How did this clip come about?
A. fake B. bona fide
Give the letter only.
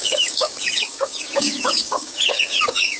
A